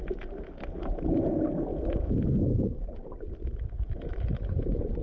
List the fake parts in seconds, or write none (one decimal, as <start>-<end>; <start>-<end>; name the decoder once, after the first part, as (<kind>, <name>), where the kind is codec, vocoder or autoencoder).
none